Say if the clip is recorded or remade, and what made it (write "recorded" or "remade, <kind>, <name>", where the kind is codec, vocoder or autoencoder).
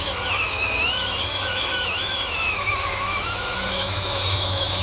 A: remade, autoencoder, DAC-VAE